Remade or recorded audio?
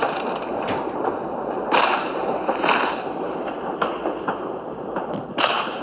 remade